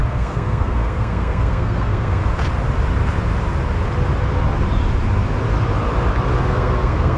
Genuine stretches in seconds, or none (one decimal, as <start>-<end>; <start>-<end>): 2.2-6.4